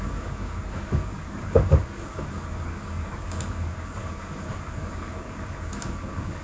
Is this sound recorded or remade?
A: remade